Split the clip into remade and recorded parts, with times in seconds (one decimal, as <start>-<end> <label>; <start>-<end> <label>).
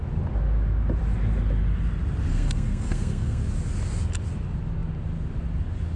0.0-2.3 recorded; 2.3-3.4 remade; 3.4-6.0 recorded